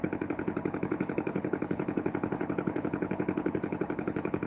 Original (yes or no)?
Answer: no